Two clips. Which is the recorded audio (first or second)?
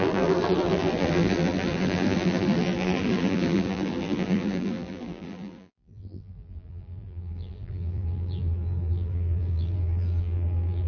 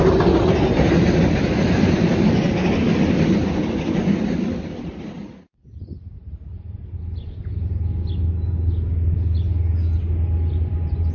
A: second